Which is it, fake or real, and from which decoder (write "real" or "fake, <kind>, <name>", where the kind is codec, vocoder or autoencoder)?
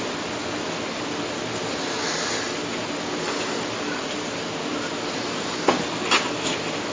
real